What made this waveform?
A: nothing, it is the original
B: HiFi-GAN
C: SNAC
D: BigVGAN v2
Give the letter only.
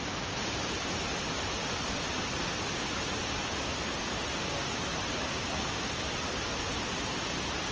A